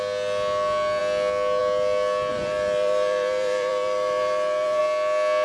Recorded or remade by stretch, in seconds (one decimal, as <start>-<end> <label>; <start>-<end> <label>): 0.0-2.3 recorded; 2.3-4.8 remade; 4.8-5.4 recorded